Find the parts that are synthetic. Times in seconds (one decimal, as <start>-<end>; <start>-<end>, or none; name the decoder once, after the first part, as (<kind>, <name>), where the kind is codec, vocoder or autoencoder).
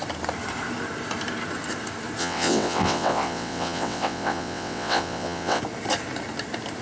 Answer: 2.2-5.6 (vocoder, WaveNeXt)